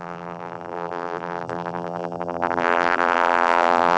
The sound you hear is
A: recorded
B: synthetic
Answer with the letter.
B